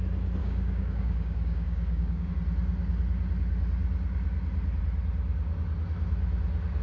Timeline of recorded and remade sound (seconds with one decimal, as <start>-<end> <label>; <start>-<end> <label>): 0.0-0.4 recorded; 0.4-2.3 remade; 2.3-6.8 recorded